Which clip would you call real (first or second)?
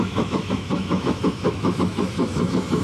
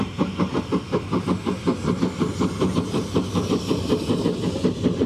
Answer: second